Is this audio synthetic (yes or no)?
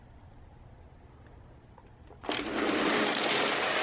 no